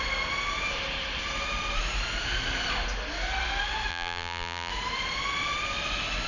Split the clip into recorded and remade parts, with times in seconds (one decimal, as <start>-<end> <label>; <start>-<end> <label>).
0.0-3.9 recorded; 3.9-4.7 remade; 4.7-6.3 recorded